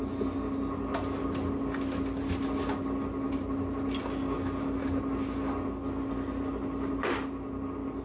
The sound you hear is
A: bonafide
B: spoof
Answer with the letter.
A